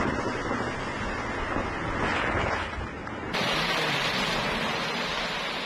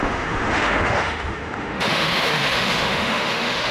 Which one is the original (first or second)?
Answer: first